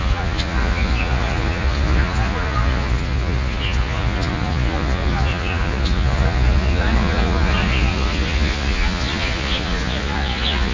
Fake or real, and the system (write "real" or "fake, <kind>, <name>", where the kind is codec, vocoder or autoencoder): fake, vocoder, Vocos